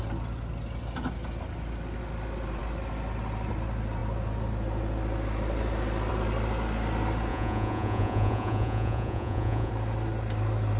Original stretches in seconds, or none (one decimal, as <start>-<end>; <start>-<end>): 0.0-7.3; 9.7-10.8